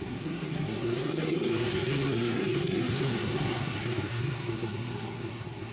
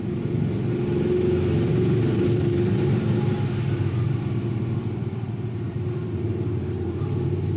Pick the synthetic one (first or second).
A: first